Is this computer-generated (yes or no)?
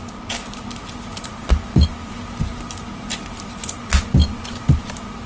no